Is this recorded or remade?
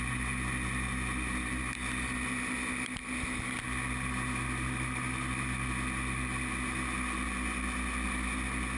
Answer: recorded